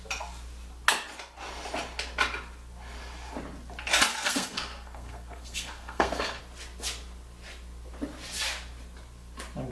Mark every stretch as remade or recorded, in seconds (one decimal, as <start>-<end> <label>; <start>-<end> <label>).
0.0-4.1 recorded; 4.1-6.4 remade; 6.4-9.7 recorded

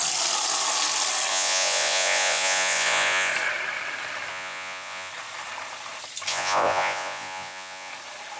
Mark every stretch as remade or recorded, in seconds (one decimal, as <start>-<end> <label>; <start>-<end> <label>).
0.0-1.3 recorded; 1.3-3.3 remade; 3.3-4.3 recorded; 4.3-5.1 remade; 5.1-6.3 recorded; 6.3-7.9 remade; 7.9-8.4 recorded

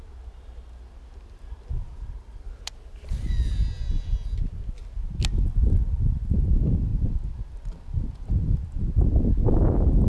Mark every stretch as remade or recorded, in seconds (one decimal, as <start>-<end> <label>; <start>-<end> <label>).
0.0-10.1 recorded

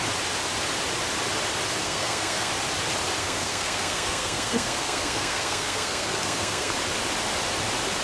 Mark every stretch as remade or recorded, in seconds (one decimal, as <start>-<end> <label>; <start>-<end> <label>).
0.0-1.8 recorded; 1.8-2.5 remade; 2.5-3.2 recorded; 3.2-6.7 remade; 6.7-8.0 recorded

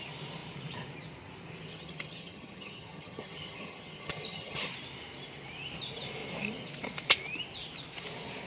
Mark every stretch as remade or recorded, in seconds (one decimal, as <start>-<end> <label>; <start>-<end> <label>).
0.0-1.7 recorded; 1.7-4.7 remade; 4.7-8.5 recorded

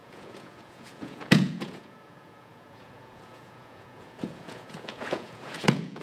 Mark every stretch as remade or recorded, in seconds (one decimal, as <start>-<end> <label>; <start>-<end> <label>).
0.0-6.0 remade

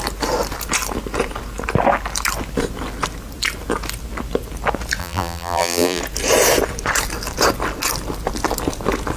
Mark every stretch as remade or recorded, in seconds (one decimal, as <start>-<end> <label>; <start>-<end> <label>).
0.0-5.0 recorded; 5.0-6.0 remade; 6.0-9.2 recorded